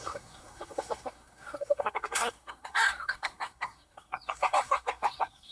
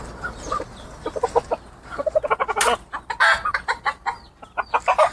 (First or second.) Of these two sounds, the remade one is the first